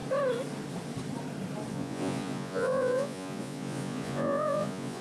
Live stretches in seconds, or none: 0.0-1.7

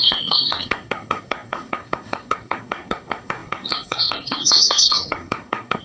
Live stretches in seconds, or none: none

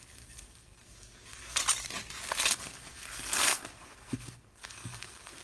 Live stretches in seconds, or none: 1.6-2.5

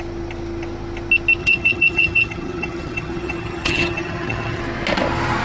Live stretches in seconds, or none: 0.0-1.4; 4.6-5.4